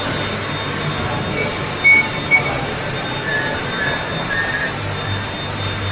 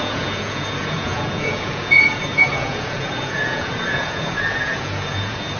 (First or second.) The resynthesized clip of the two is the second